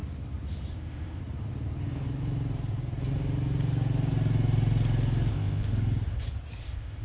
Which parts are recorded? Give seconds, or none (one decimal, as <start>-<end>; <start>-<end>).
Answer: 0.0-0.7; 1.2-5.3; 5.7-6.6